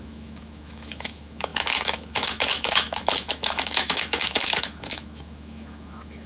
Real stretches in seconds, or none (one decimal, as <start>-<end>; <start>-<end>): none